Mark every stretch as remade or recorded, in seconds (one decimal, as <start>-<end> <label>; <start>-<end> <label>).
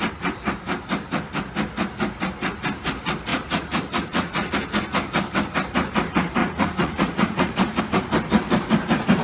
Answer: 0.0-3.3 recorded; 3.3-4.5 remade; 4.5-6.4 recorded; 6.4-7.8 remade; 7.8-9.2 recorded